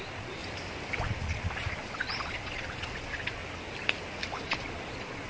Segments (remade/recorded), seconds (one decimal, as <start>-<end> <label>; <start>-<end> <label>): 0.0-0.4 remade; 0.4-1.0 recorded; 1.0-3.4 remade; 3.4-4.3 recorded; 4.3-5.3 remade

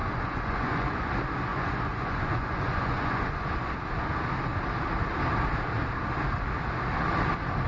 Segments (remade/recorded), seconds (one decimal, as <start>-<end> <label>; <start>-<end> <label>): 0.0-1.1 remade; 1.1-1.5 recorded; 1.5-3.5 remade; 3.5-7.7 recorded

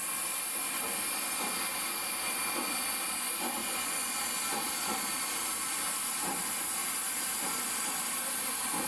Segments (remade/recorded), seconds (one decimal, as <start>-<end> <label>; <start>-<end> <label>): 0.0-3.6 recorded; 3.6-4.1 remade; 4.1-8.9 recorded

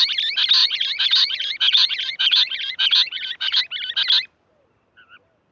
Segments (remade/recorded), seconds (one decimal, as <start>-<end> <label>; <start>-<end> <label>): 0.0-0.6 recorded; 0.6-3.6 remade; 3.6-5.5 recorded

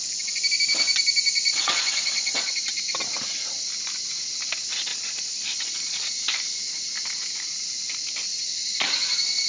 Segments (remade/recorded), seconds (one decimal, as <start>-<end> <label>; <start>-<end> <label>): 0.0-1.5 recorded; 1.5-2.5 remade; 2.5-4.9 recorded; 4.9-6.0 remade; 6.0-9.5 recorded

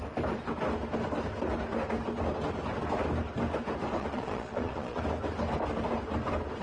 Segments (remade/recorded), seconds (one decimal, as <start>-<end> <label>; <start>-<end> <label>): 0.0-4.0 recorded; 4.0-5.0 remade; 5.0-6.6 recorded